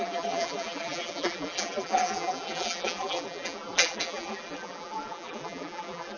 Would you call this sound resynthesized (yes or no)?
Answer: yes